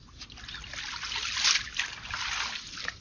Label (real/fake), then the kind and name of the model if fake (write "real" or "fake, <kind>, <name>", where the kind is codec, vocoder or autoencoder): real